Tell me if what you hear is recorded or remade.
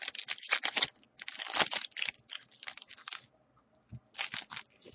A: recorded